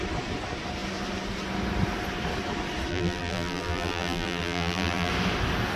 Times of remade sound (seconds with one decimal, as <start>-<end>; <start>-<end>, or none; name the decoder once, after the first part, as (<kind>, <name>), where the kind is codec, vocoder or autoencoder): 2.9-5.1 (vocoder, BigVGAN v2)